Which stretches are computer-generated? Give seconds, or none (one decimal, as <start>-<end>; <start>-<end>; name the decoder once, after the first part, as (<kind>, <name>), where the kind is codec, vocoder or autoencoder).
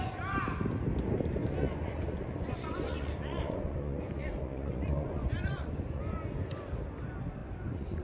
1.4-6.0 (vocoder, Vocos); 7.4-8.0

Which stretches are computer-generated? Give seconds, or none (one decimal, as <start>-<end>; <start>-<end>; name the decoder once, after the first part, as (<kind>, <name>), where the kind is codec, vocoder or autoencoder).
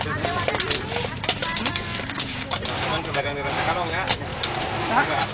1.4-3.2 (codec, DAC)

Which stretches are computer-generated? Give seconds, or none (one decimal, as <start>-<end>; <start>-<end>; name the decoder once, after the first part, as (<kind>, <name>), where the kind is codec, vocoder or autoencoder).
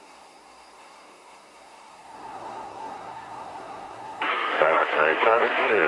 0.0-5.9 (codec, SNAC)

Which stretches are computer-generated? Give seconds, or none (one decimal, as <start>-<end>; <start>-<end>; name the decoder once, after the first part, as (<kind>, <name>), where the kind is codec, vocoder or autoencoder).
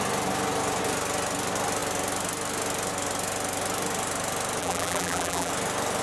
4.6-5.5 (vocoder, BigVGAN v2)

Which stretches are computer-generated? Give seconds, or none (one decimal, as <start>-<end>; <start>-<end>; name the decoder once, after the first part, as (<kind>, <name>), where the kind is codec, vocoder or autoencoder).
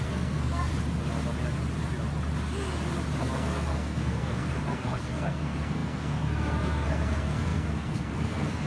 0.0-0.7 (codec, SNAC); 3.2-8.7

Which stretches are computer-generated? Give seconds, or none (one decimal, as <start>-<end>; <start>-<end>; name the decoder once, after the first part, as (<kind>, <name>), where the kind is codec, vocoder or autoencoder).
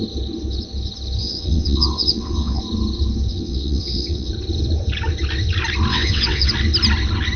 1.2-2.6 (vocoder, WaveNeXt); 3.3-4.3; 5.9-6.5